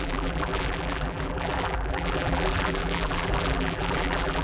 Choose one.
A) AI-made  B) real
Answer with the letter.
A